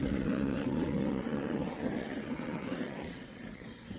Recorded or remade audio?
remade